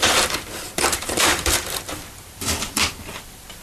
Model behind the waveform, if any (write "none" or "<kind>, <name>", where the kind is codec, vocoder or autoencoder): vocoder, BigVGAN v2